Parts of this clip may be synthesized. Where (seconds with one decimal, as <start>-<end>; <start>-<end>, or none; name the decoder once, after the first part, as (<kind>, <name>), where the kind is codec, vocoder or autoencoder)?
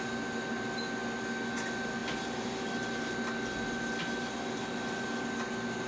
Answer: 2.0-2.7 (vocoder, BigVGAN v2)